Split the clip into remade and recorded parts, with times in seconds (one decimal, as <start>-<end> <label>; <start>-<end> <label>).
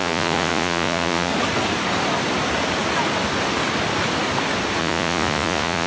0.0-1.3 remade; 1.3-4.8 recorded; 4.8-5.9 remade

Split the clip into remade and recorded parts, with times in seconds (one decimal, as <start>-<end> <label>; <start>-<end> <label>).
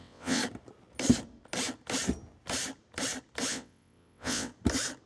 0.0-0.4 remade; 0.4-3.5 recorded; 3.5-4.5 remade; 4.5-5.1 recorded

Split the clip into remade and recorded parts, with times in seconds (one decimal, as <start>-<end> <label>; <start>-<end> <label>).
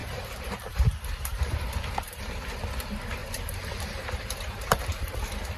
0.0-2.5 remade; 2.5-3.2 recorded; 3.2-5.1 remade; 5.1-5.6 recorded